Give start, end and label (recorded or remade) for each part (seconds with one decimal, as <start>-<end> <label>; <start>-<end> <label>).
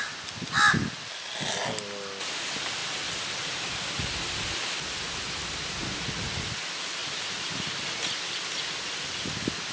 0.0-9.7 recorded